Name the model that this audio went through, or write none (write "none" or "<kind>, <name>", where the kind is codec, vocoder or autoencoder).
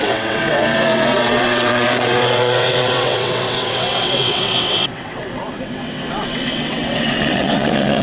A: vocoder, WaveNeXt